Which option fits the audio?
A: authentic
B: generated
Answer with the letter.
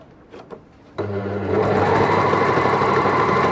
B